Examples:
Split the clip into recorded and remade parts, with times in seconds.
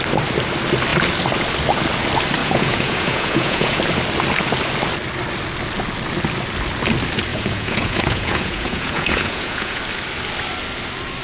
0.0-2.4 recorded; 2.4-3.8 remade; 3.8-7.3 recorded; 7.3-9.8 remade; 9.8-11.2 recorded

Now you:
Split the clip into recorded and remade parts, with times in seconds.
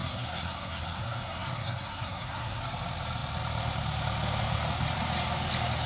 0.0-2.6 remade; 2.6-5.9 recorded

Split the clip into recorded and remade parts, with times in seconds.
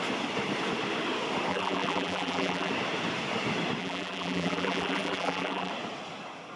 0.0-1.5 recorded; 1.5-2.7 remade; 2.7-3.8 recorded; 3.8-5.7 remade; 5.7-6.6 recorded